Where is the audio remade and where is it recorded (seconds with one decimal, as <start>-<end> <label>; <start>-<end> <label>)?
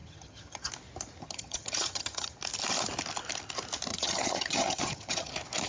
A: 0.0-0.7 remade; 0.7-1.2 recorded; 1.2-2.4 remade; 2.4-3.9 recorded; 3.9-5.3 remade; 5.3-5.7 recorded